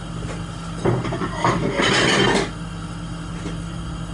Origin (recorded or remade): recorded